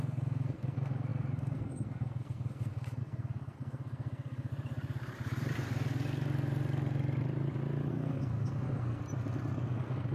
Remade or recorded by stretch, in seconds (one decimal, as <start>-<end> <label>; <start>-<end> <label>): 0.0-4.5 remade; 4.5-7.9 recorded; 7.9-9.0 remade; 9.0-9.6 recorded; 9.6-10.1 remade

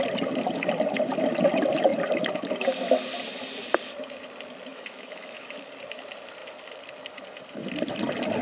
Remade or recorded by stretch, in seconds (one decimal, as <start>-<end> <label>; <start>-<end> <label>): 0.0-4.7 recorded; 4.7-5.7 remade; 5.7-8.4 recorded

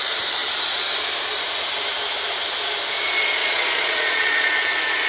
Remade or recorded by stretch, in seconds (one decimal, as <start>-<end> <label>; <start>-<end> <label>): 0.0-3.4 recorded; 3.4-4.5 remade; 4.5-5.1 recorded